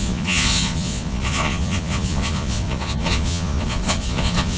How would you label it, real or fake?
fake